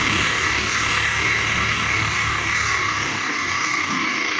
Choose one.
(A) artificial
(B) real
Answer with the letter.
A